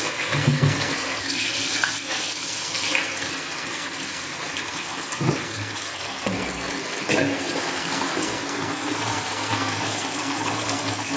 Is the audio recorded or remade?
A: remade